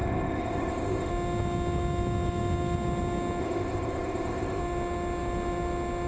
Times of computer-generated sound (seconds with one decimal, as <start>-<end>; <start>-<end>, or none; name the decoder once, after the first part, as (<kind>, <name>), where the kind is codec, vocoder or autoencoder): 0.0-1.1 (codec, ZipCodec); 3.4-4.6